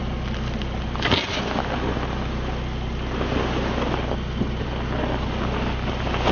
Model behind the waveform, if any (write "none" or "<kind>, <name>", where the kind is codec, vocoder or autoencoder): none